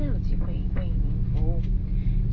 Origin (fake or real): real